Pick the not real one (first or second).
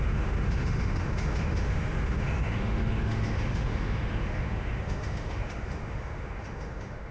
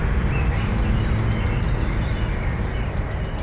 first